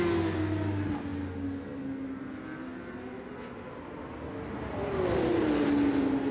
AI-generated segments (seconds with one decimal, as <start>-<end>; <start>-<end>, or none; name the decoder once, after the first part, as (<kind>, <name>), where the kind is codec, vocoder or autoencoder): none

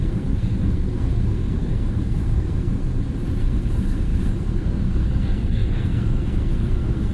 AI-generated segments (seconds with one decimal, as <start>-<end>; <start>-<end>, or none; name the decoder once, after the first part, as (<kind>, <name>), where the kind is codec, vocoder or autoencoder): 0.0-2.9 (codec, SNAC); 3.4-7.1

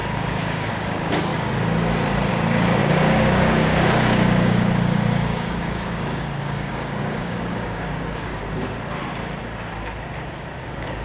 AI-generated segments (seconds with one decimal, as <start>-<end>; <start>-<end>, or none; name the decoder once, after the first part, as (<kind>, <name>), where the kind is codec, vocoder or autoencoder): 0.0-1.3 (codec, DAC); 2.3-8.3; 10.3-11.0

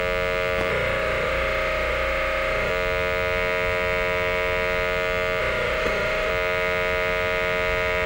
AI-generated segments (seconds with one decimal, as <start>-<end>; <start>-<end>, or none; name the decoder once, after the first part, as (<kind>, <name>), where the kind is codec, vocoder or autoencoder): 0.7-2.7 (autoencoder, DAC-VAE); 5.4-6.3

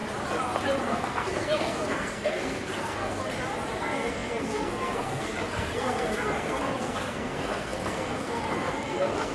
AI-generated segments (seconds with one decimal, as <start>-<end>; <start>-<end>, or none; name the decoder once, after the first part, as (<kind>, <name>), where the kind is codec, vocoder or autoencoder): 0.8-3.2 (codec, SNAC); 3.8-9.3